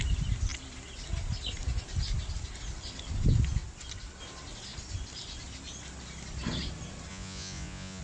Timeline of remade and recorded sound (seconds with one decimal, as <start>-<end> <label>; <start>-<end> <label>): 0.0-7.1 recorded; 7.1-8.0 remade